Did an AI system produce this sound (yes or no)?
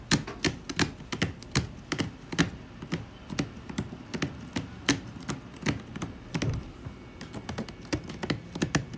no